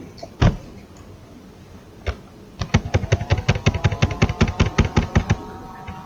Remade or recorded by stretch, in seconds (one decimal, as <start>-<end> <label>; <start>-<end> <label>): 0.0-6.1 recorded